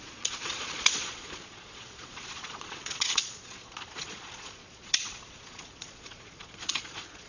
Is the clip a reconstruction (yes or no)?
yes